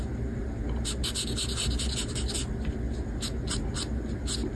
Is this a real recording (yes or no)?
yes